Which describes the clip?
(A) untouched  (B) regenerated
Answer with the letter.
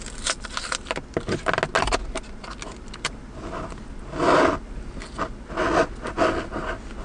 A